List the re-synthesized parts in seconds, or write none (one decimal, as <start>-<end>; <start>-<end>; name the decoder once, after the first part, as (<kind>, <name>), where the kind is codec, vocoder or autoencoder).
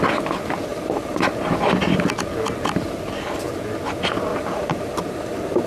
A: 0.7-1.3 (vocoder, BigVGAN v2); 4.3-5.7